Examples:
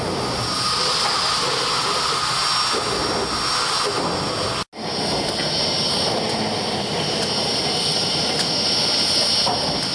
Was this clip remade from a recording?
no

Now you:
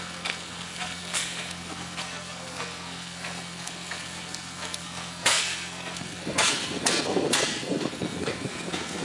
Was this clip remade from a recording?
yes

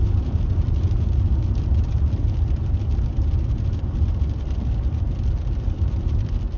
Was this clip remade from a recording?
yes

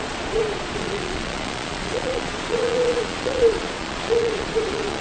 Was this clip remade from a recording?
yes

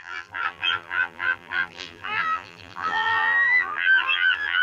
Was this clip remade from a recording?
yes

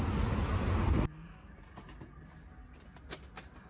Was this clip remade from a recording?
no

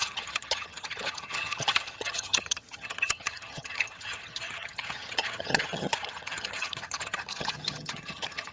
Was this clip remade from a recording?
yes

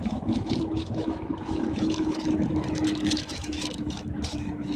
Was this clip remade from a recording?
yes